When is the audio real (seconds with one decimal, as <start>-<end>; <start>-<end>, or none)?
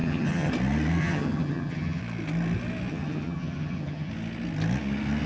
0.5-1.0; 2.0-2.9; 4.1-5.3